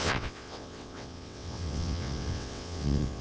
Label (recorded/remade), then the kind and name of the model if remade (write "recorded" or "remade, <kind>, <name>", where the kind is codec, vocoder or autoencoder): remade, vocoder, WaveNeXt